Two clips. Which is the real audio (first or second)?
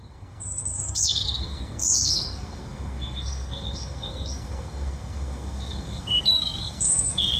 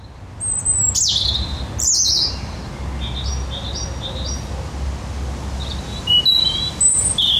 second